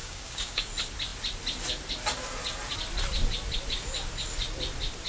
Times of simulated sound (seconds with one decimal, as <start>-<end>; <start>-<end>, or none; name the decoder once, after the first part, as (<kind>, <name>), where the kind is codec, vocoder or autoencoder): 0.0-0.7 (codec, DAC)